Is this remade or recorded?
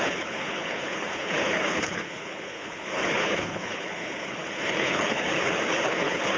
remade